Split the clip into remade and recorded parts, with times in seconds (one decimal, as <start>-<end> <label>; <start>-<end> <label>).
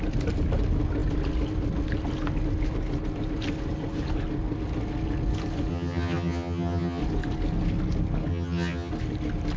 0.0-5.7 recorded; 5.7-7.0 remade; 7.0-8.3 recorded; 8.3-8.9 remade; 8.9-9.6 recorded